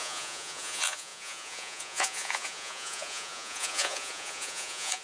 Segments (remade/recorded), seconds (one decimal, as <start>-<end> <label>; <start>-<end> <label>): 0.0-5.0 remade